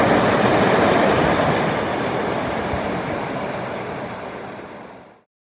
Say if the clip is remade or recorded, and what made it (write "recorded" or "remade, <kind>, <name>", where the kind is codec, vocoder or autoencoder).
recorded